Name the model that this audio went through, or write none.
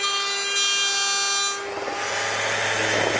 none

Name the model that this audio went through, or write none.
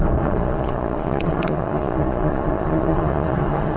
vocoder, Vocos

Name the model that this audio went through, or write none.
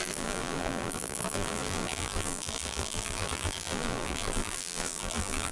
vocoder, BigVGAN v2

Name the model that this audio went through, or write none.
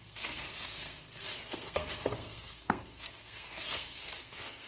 codec, SNAC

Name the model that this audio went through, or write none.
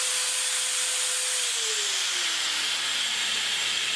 none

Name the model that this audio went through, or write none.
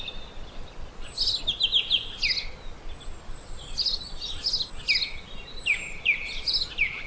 none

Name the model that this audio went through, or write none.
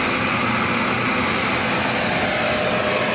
none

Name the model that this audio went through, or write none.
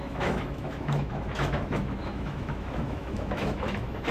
autoencoder, DAC-VAE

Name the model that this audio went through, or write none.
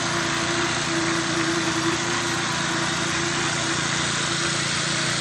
none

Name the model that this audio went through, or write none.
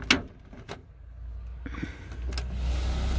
none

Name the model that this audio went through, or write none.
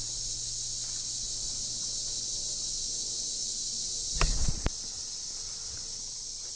none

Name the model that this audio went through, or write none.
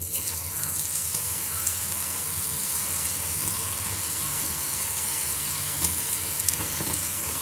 codec, SNAC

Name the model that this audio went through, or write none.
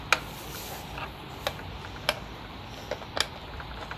none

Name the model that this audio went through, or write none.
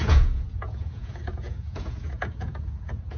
vocoder, Vocos